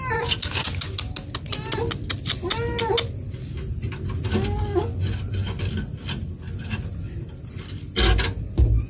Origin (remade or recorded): recorded